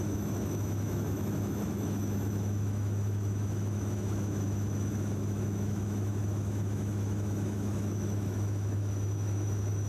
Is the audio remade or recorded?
remade